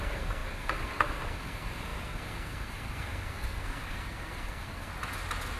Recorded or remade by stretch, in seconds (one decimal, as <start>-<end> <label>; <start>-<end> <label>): 0.0-4.9 remade; 4.9-5.6 recorded